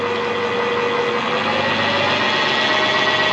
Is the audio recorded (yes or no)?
yes